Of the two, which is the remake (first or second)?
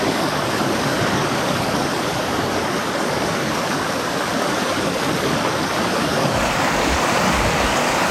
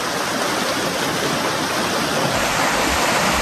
first